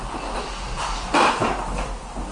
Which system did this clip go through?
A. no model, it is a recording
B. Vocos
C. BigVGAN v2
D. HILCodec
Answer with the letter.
A